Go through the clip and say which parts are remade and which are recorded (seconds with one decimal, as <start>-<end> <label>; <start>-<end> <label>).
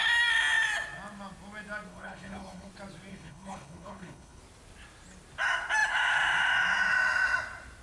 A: 0.0-1.9 recorded; 1.9-2.7 remade; 2.7-3.1 recorded; 3.1-4.4 remade; 4.4-7.8 recorded